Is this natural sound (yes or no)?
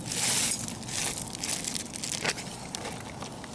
yes